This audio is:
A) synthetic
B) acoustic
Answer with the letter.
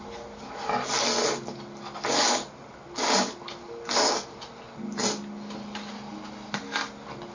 B